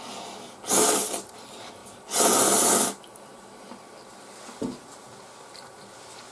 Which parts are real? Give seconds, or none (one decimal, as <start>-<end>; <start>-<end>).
0.0-6.3